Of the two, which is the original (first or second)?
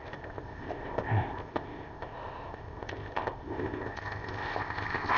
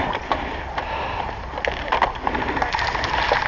second